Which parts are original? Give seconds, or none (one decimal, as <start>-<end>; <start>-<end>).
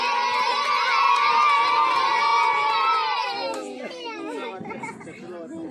0.0-5.7